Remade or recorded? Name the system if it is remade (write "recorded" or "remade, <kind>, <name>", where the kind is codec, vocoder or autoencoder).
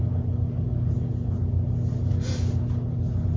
recorded